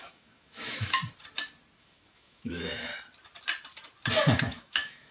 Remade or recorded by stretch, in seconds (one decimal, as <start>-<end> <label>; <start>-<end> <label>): 0.0-1.0 remade; 1.0-1.8 recorded; 1.8-2.9 remade; 2.9-4.4 recorded; 4.4-5.1 remade

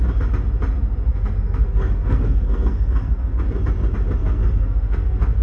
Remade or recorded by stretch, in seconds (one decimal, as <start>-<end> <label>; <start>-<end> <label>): 0.0-1.1 recorded; 1.1-3.4 remade; 3.4-4.2 recorded; 4.2-5.4 remade